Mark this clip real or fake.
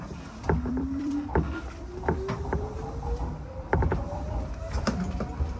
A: fake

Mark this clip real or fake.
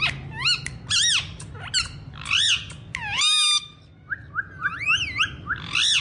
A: real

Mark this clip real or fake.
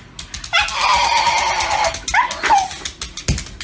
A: real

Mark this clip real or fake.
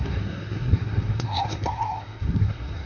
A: fake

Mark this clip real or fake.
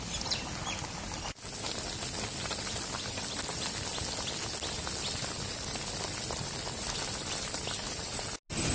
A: real